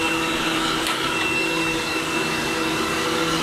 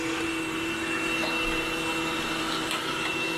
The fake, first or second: first